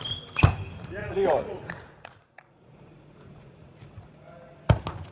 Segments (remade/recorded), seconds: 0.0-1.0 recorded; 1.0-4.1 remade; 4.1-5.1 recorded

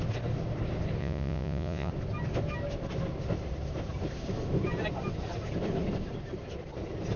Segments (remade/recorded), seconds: 0.0-1.0 recorded; 1.0-1.9 remade; 1.9-7.2 recorded

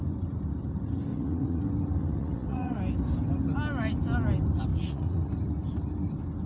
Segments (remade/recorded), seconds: 0.0-1.1 recorded; 1.1-1.6 remade; 1.6-2.0 recorded; 2.0-2.8 remade; 2.8-4.7 recorded; 4.7-5.3 remade; 5.3-6.5 recorded

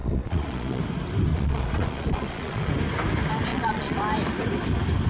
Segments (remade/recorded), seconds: 0.0-0.8 remade; 0.8-1.3 recorded; 1.3-2.7 remade; 2.7-3.5 recorded; 3.5-4.0 remade; 4.0-5.1 recorded